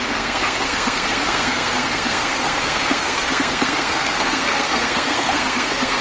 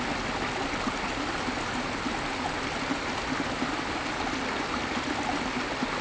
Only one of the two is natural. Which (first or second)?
second